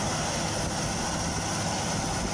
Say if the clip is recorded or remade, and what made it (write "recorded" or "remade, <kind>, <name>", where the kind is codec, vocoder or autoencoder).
recorded